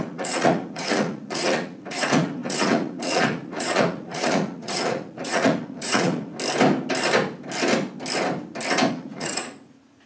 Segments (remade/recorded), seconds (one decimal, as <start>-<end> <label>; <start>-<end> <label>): 0.0-6.3 remade; 6.3-8.9 recorded; 8.9-10.1 remade